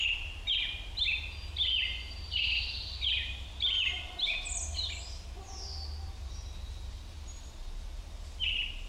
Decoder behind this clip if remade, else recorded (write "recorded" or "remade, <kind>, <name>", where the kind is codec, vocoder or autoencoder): recorded